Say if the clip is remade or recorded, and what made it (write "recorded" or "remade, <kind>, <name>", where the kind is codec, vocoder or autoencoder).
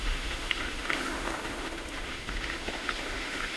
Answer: remade, autoencoder, DAC-VAE